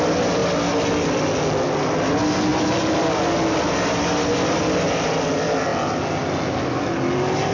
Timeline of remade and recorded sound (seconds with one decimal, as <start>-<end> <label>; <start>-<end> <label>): 0.0-7.5 recorded